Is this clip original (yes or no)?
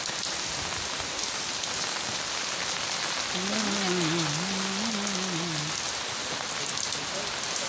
yes